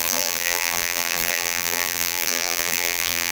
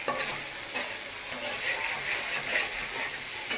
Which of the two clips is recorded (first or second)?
second